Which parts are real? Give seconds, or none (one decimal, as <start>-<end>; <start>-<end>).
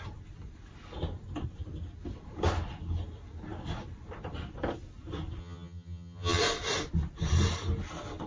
0.0-5.4; 6.4-8.3